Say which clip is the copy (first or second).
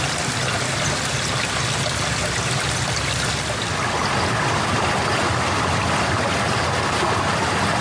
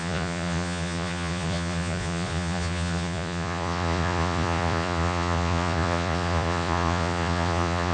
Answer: second